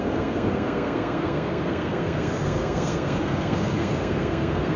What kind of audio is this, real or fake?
fake